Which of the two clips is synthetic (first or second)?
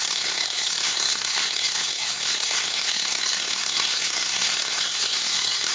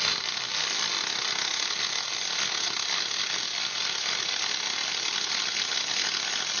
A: first